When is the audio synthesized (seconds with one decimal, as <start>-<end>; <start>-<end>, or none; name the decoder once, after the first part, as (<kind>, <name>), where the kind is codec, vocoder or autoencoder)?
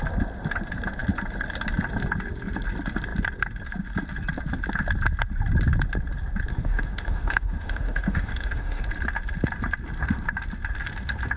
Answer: 6.5-8.8 (autoencoder, DAC-VAE)